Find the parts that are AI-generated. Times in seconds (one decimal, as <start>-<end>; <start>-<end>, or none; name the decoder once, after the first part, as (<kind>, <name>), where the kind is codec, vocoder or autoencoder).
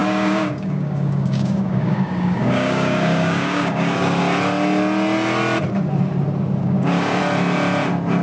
0.0-4.2 (codec, DAC); 6.6-7.2